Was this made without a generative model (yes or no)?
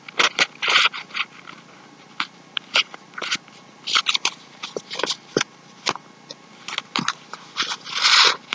yes